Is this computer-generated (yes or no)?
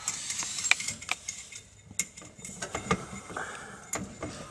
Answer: no